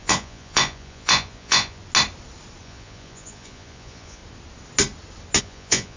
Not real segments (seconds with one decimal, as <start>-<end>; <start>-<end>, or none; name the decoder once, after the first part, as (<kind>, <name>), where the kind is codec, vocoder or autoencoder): 0.0-1.8 (vocoder, Vocos); 2.6-4.2; 5.4-6.0